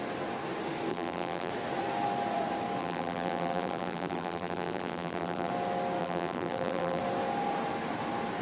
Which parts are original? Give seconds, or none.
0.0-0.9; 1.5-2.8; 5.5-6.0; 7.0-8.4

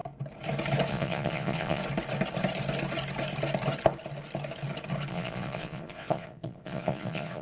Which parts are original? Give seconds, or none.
0.0-0.9; 1.8-5.1

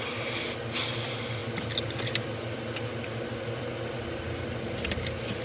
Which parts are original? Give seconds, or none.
0.0-5.4

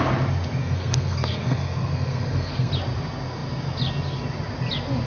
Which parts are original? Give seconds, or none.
0.0-0.6; 2.7-5.1

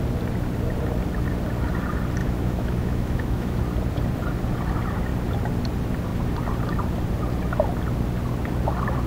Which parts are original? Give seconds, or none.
0.0-2.2; 3.6-9.1

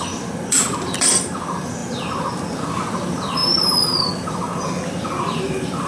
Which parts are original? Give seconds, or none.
1.8-2.8; 4.5-5.3